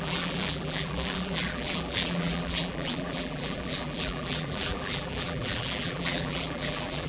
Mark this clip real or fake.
fake